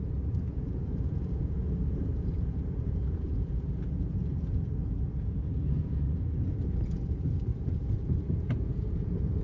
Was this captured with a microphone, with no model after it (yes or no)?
no